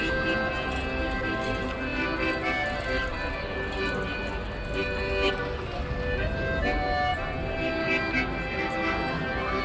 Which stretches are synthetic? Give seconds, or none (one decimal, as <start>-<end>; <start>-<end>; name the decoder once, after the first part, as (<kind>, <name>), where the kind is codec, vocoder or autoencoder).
none